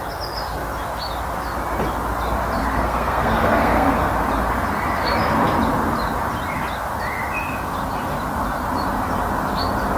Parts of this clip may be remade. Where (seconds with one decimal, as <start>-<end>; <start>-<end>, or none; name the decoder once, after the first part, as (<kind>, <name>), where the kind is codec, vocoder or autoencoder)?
2.6-4.1 (codec, SNAC)